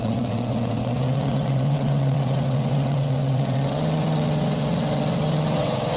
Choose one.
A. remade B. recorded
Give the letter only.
A